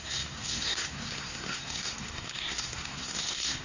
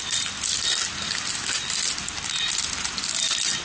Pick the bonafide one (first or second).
second